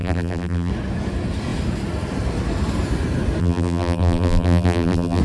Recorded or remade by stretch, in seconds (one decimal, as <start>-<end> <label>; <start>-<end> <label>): 0.0-0.7 remade; 0.7-3.4 recorded; 3.4-5.2 remade